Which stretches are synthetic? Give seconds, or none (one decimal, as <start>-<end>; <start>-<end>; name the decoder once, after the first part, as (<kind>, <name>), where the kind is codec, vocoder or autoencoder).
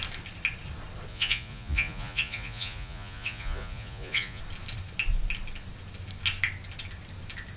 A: 1.1-4.4 (vocoder, Vocos)